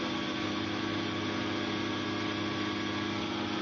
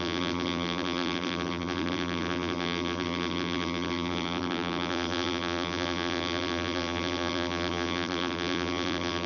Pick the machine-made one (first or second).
second